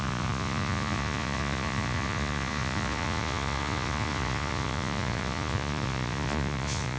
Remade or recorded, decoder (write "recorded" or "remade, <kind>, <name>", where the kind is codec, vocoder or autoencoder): remade, vocoder, Vocos